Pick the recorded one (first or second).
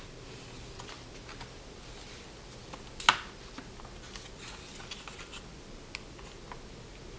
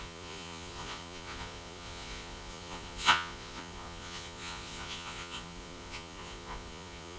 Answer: first